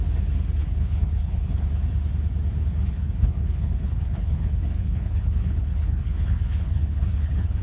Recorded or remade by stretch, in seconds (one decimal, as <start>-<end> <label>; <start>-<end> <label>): 0.0-0.6 recorded; 0.6-1.7 remade; 1.7-2.9 recorded; 2.9-7.6 remade